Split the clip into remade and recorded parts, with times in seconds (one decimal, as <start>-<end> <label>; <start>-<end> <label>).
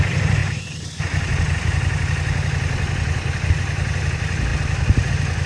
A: 0.0-5.5 recorded